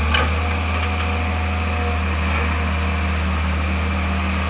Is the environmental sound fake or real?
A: real